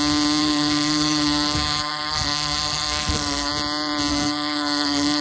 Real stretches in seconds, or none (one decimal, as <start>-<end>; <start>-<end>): 0.0-0.4; 3.5-4.1